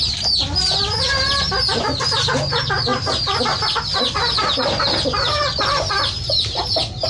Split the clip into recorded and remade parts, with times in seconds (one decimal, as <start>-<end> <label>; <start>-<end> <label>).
0.0-7.1 recorded